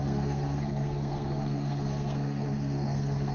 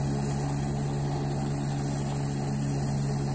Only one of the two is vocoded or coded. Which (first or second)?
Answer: first